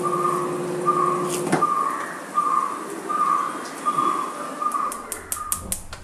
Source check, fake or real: real